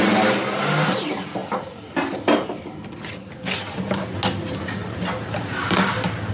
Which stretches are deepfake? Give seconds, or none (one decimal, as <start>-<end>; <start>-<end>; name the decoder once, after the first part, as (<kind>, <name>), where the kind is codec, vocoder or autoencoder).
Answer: none